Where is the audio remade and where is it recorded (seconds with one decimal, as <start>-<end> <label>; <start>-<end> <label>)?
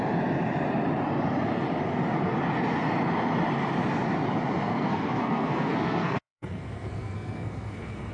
0.0-4.7 recorded; 4.7-8.1 remade